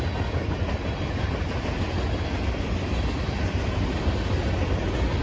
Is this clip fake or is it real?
real